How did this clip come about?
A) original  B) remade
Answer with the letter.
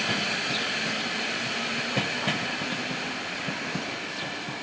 A